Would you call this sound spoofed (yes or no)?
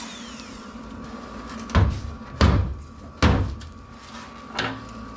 no